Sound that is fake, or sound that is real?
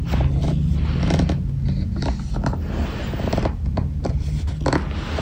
real